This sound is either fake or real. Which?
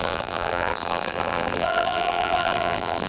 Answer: fake